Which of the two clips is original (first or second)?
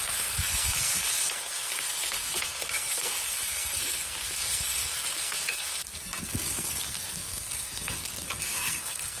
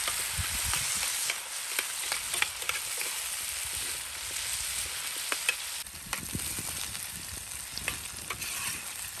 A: second